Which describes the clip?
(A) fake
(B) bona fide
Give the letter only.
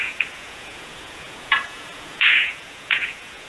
A